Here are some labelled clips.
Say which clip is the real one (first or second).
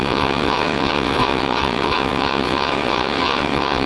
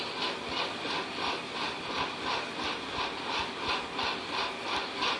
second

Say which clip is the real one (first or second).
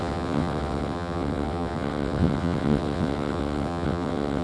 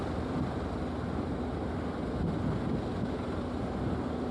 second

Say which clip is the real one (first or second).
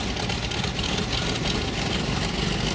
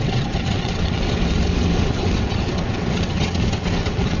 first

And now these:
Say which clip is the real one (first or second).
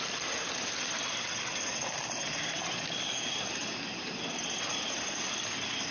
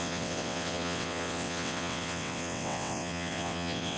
first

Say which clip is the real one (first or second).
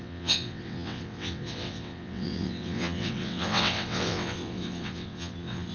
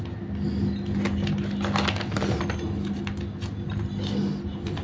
second